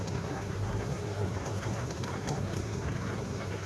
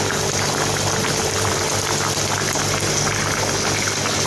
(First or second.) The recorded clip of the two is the second